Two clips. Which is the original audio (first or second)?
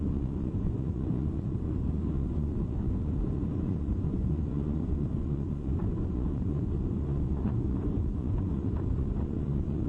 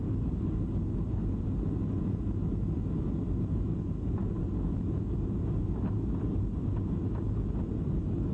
second